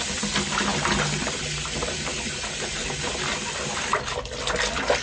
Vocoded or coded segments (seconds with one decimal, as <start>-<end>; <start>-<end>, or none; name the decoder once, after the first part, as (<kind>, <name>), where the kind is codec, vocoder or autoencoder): none